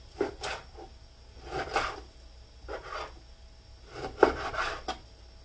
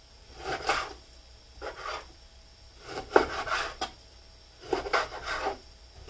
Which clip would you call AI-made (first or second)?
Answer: second